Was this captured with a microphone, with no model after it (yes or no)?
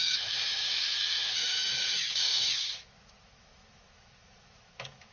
no